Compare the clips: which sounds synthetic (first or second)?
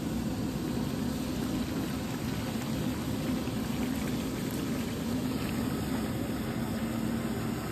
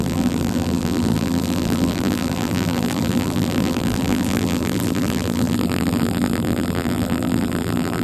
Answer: second